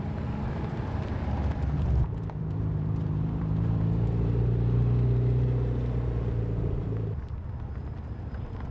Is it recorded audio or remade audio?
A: remade